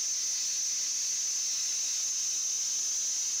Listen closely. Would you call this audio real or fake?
real